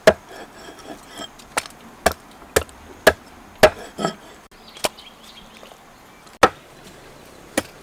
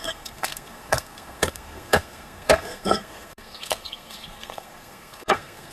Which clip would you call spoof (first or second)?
second